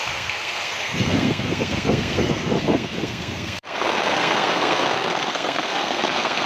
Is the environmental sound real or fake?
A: fake